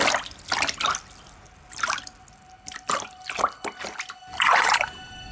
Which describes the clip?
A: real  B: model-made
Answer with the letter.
A